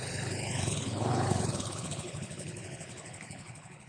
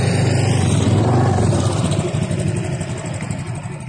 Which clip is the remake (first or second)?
first